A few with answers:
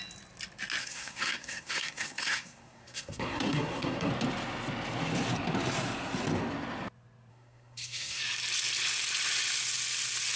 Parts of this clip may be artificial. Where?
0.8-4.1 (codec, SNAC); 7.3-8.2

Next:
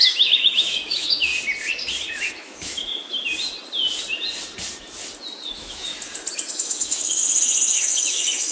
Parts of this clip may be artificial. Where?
0.0-1.3 (autoencoder, DAC-VAE); 2.1-2.9; 5.5-5.9; 6.5-8.5